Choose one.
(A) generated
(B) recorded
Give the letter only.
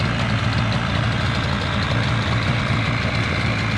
B